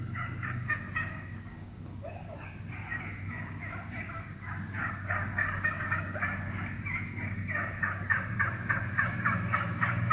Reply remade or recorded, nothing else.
remade